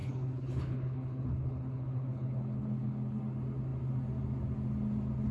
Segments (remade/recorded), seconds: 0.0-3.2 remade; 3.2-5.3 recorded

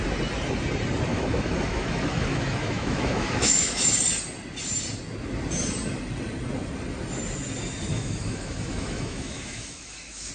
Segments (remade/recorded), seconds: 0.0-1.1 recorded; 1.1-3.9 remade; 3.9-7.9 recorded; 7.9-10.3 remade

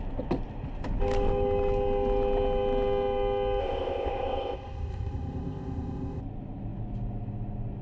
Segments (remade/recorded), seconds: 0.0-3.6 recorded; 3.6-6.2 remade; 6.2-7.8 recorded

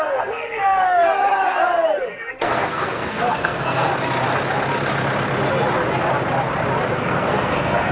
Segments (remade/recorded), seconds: 0.0-1.1 remade; 1.1-2.0 recorded; 2.0-3.9 remade; 3.9-6.9 recorded; 6.9-7.9 remade

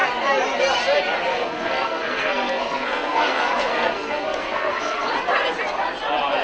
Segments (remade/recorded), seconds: 0.0-1.3 recorded; 1.3-5.1 remade; 5.1-6.4 recorded